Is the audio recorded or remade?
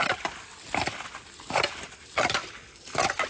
recorded